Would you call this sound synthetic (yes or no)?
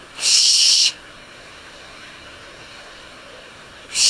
yes